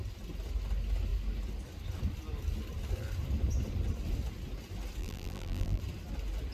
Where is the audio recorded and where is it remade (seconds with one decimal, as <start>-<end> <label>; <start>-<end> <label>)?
0.0-5.0 recorded; 5.0-5.8 remade; 5.8-6.5 recorded